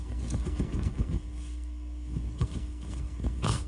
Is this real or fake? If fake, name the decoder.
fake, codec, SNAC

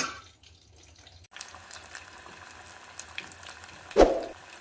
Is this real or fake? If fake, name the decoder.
real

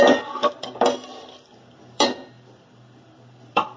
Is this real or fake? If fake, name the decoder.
fake, vocoder, BigVGAN v2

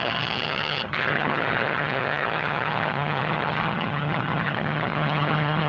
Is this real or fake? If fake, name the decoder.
fake, vocoder, HiFi-GAN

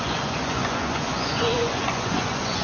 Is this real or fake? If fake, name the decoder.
fake, vocoder, Vocos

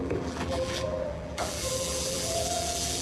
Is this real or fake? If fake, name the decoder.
fake, vocoder, BigVGAN v2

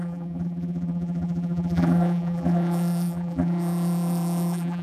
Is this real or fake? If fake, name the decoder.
fake, vocoder, BigVGAN v2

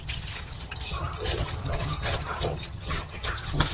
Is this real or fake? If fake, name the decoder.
fake, vocoder, HiFi-GAN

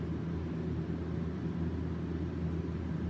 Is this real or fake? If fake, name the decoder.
real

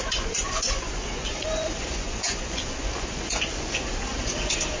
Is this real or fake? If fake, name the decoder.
fake, vocoder, Vocos